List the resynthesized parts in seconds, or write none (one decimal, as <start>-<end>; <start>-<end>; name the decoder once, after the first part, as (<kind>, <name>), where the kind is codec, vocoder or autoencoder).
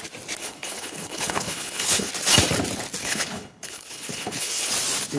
0.4-2.1 (codec, HILCodec); 3.0-4.7